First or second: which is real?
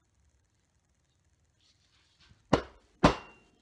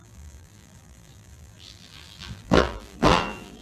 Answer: first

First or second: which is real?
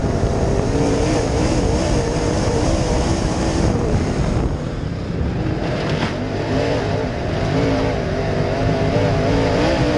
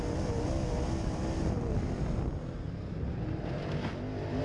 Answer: second